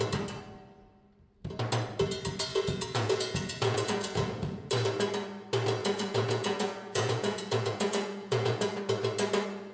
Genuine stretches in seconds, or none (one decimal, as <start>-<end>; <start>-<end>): 0.0-2.5; 4.7-5.8; 8.8-9.7